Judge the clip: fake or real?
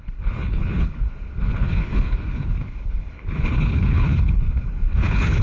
fake